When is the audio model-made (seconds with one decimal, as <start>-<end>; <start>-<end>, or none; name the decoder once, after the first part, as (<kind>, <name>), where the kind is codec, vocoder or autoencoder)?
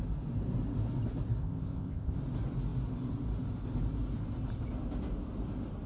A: 1.4-2.2 (codec, ZipCodec)